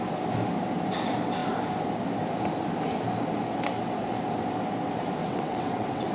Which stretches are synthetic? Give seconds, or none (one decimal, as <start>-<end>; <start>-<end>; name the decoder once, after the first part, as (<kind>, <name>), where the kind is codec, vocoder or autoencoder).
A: 5.2-6.1 (vocoder, WaveNeXt)